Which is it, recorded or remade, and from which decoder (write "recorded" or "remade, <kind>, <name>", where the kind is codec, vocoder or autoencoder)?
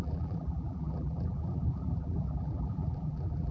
remade, vocoder, BigVGAN v2